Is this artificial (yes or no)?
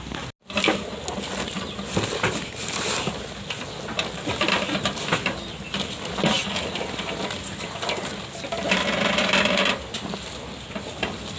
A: no